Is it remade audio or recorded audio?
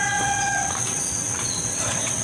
remade